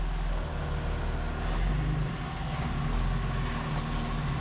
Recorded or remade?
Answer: recorded